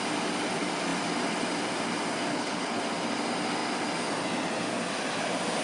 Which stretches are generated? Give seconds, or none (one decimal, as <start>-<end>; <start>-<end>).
2.3-2.8